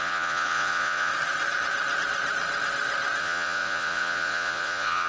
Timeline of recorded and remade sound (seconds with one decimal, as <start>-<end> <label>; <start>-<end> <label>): 0.0-1.1 remade; 1.1-3.2 recorded; 3.2-5.1 remade